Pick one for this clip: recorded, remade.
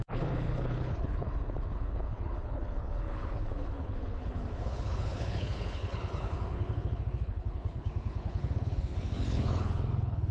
remade